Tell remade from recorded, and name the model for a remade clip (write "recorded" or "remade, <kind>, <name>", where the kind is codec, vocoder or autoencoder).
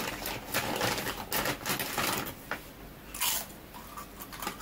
recorded